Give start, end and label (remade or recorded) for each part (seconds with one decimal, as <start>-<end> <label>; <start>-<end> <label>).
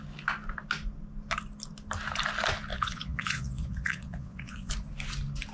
0.0-2.7 recorded; 2.7-4.7 remade; 4.7-5.5 recorded